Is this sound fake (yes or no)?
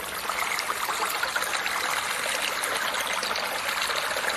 no